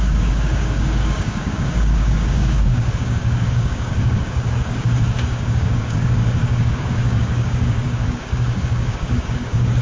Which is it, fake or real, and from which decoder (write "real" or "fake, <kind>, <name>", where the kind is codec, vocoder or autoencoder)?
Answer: fake, codec, DAC